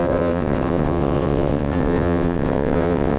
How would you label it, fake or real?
fake